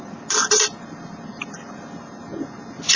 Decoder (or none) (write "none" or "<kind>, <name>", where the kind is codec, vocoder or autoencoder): none